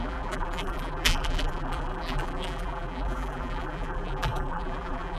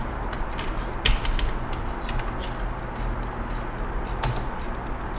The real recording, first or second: second